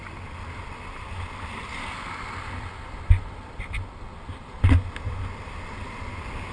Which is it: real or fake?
real